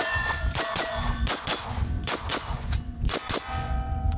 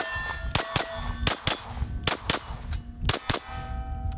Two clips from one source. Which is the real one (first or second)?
second